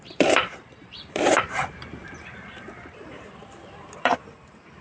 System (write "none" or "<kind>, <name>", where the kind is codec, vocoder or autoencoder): vocoder, BigVGAN v2